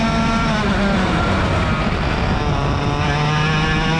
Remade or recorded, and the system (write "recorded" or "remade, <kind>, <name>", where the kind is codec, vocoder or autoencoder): recorded